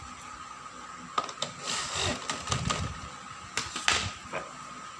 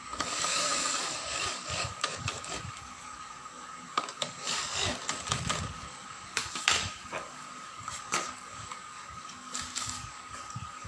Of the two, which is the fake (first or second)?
second